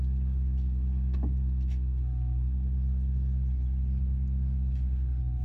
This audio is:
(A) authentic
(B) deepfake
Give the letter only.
A